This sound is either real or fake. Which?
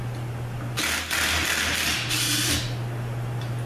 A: real